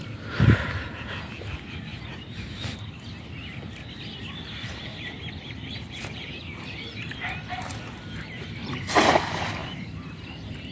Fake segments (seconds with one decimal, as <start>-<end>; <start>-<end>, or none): 1.9-2.9; 4.6-7.9; 9.6-10.7